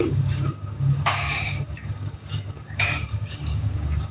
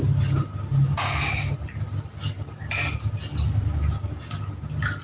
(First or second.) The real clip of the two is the second